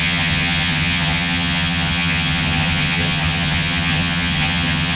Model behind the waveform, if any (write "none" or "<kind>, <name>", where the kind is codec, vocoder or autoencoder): vocoder, HiFi-GAN